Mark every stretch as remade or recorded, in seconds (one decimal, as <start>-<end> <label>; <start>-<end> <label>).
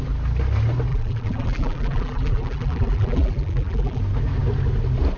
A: 0.0-0.9 recorded; 0.9-4.0 remade; 4.0-5.2 recorded